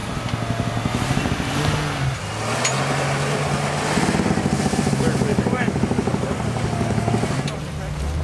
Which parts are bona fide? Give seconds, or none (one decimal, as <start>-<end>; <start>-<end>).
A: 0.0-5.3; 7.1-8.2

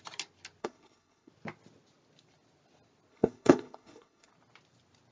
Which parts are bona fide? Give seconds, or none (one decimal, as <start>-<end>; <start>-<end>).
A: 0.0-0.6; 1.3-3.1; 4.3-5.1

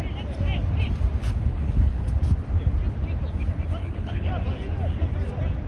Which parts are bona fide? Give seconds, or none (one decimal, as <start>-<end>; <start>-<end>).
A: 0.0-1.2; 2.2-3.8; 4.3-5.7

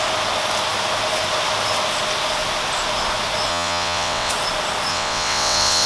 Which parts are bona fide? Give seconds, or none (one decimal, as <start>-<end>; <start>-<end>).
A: 0.0-3.5; 4.3-4.9